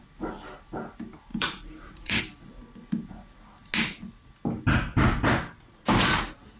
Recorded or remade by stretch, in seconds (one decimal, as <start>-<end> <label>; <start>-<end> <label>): 0.0-1.3 recorded; 1.3-2.2 remade; 2.2-6.6 recorded